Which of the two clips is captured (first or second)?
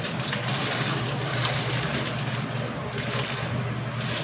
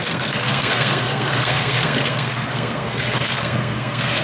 first